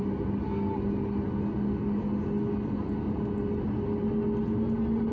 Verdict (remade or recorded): recorded